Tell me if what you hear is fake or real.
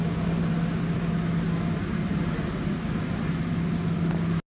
real